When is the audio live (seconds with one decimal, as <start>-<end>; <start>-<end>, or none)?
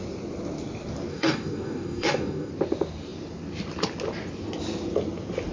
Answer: 0.0-1.1; 2.5-5.5